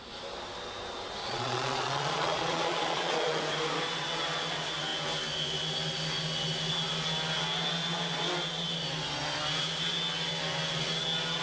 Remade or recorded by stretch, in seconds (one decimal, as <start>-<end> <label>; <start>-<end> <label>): 0.0-1.2 recorded; 1.2-3.4 remade; 3.4-11.4 recorded